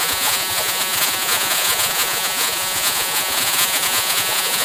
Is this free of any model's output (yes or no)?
no